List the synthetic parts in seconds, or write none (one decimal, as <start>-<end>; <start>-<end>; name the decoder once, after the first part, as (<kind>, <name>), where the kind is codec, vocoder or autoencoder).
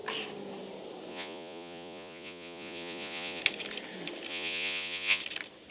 1.1-3.4 (vocoder, Vocos); 4.3-5.2